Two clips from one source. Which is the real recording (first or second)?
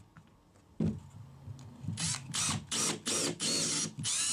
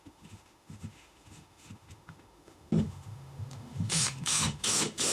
first